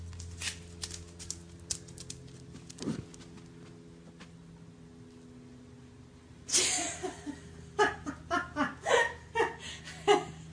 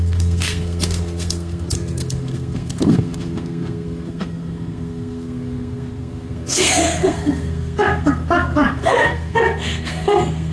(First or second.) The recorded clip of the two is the first